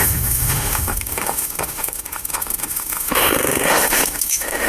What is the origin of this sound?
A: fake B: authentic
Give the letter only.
A